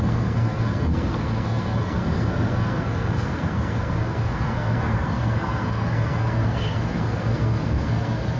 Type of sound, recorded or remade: remade